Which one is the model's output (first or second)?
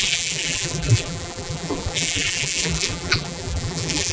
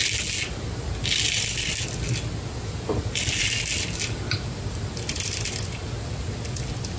first